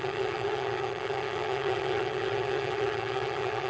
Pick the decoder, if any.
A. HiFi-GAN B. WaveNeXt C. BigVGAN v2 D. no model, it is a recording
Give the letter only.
A